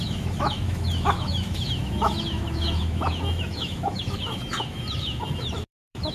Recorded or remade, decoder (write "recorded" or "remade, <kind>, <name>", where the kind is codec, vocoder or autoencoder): remade, autoencoder, DAC-VAE